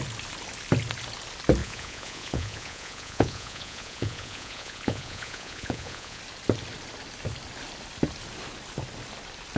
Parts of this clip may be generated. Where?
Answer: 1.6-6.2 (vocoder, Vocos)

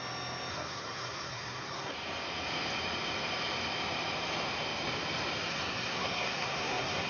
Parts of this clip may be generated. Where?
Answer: 0.5-1.9 (codec, SNAC); 5.5-7.1